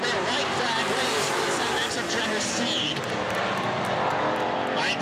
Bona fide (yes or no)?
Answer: no